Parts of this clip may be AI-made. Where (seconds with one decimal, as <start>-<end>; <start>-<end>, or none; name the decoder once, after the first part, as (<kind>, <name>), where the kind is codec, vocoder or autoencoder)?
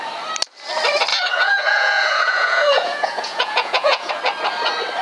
1.1-4.1 (vocoder, Vocos)